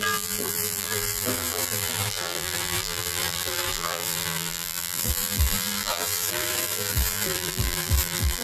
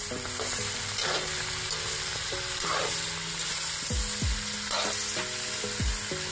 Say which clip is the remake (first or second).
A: first